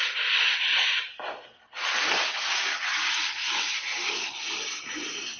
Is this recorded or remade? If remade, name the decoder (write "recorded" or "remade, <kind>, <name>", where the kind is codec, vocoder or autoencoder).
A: recorded